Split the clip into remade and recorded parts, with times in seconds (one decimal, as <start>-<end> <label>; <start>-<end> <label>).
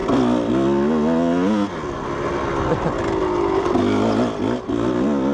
0.0-5.3 recorded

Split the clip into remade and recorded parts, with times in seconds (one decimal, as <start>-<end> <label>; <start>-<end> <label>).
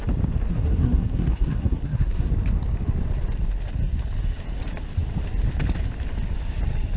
0.0-0.5 recorded; 0.5-2.3 remade; 2.3-7.0 recorded